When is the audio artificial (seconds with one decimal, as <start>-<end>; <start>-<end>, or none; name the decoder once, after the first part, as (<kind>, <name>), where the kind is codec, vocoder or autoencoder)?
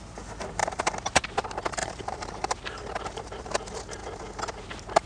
0.6-1.2 (vocoder, BigVGAN v2); 1.8-3.5